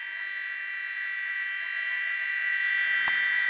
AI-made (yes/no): no